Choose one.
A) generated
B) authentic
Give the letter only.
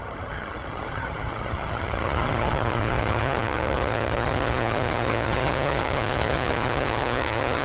A